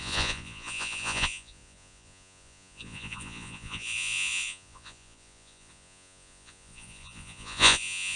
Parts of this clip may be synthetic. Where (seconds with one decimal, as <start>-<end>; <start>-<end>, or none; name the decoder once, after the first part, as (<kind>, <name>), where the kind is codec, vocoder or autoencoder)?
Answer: 0.0-8.2 (vocoder, Vocos)